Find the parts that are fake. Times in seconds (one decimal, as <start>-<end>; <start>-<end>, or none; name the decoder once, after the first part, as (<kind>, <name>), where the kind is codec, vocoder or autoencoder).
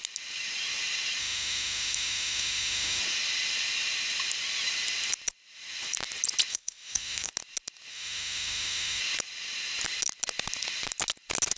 1.2-3.0 (autoencoder, DAC-VAE); 6.5-7.3; 7.9-9.0